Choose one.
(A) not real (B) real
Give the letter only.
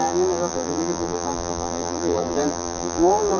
A